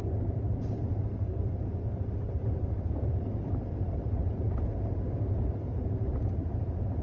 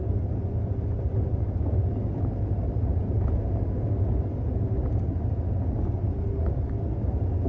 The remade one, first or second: first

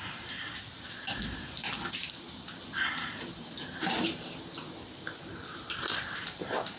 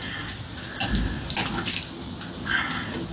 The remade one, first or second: first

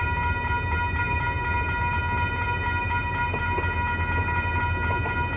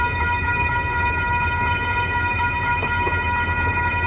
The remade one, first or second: second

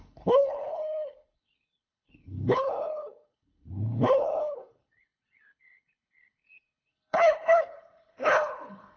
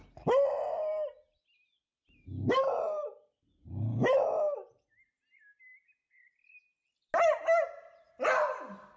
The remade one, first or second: first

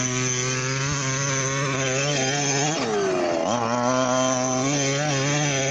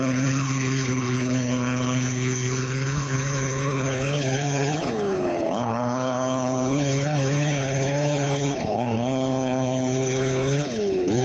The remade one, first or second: second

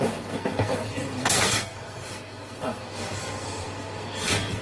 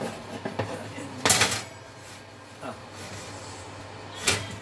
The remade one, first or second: first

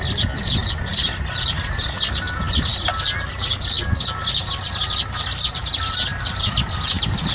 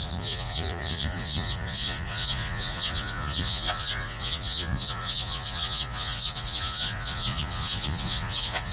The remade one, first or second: second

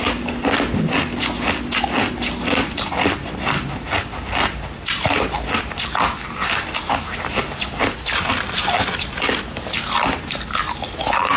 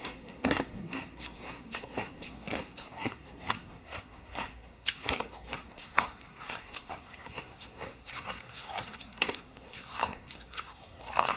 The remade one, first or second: second